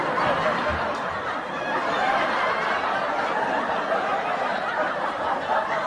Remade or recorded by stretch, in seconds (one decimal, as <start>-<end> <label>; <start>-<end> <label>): 0.0-4.5 recorded; 4.5-5.2 remade; 5.2-5.9 recorded